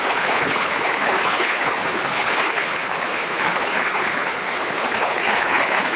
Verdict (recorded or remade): remade